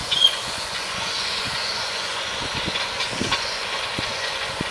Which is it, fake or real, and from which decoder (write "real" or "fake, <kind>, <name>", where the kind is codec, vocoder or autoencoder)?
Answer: fake, vocoder, Vocos